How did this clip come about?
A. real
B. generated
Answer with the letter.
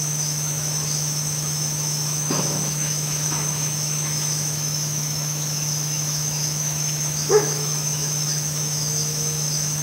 B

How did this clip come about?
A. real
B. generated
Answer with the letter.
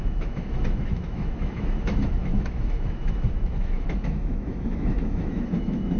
B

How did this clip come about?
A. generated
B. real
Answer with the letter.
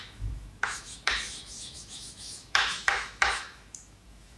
A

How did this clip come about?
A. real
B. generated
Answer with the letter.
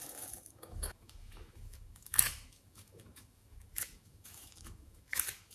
B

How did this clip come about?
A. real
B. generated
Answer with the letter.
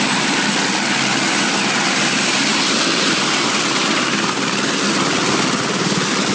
A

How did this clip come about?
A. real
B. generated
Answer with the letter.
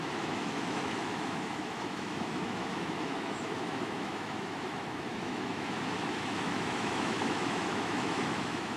B